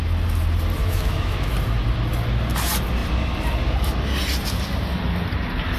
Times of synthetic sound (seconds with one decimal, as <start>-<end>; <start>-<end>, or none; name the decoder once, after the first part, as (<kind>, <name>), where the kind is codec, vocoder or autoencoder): 0.8-1.5 (autoencoder, DAC-VAE)